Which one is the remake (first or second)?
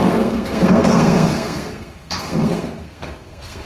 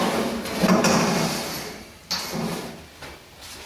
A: first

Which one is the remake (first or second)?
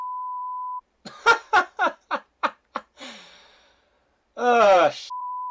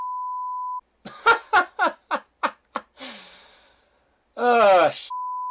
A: first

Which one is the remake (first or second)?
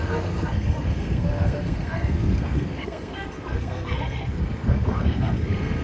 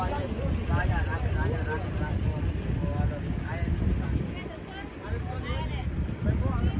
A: first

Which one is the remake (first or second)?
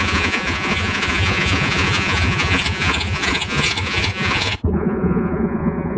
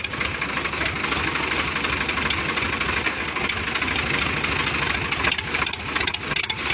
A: first